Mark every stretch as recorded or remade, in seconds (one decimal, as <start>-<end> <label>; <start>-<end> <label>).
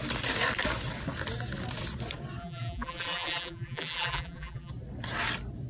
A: 0.0-2.4 recorded; 2.4-4.7 remade; 4.7-5.7 recorded